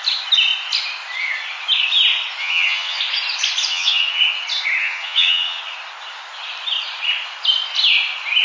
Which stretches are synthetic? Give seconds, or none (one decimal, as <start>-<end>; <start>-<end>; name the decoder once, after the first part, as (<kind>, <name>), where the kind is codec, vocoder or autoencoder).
2.4-3.0 (vocoder, HiFi-GAN); 3.7-4.2; 4.8-5.6